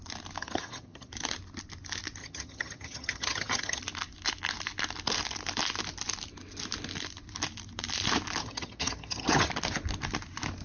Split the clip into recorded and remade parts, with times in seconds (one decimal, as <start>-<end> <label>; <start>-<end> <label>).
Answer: 0.0-0.4 recorded; 0.4-1.1 remade; 1.1-2.2 recorded; 2.2-3.8 remade; 3.8-8.4 recorded; 8.4-9.5 remade; 9.5-10.6 recorded